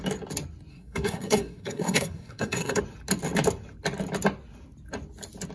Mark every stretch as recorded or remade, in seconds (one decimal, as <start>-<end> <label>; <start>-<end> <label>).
0.0-0.7 recorded; 0.7-2.8 remade; 2.8-5.5 recorded